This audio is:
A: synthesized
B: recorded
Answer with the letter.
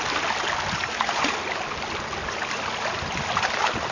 B